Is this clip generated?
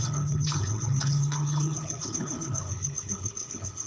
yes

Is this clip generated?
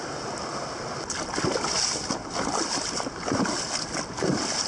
no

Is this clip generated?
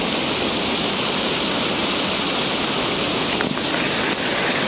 no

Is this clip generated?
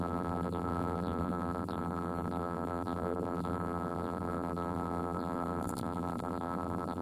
yes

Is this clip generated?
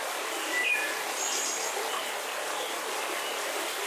no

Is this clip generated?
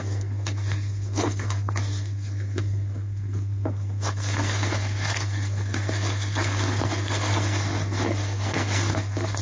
yes